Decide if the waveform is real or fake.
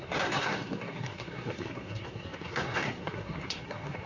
fake